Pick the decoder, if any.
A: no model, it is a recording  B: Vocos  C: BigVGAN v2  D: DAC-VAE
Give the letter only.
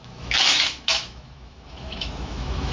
D